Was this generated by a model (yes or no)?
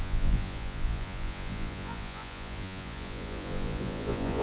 yes